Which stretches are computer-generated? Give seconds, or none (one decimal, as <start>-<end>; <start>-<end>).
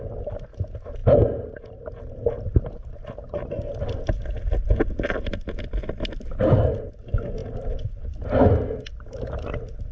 none